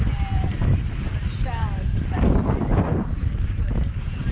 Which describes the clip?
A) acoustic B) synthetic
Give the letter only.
A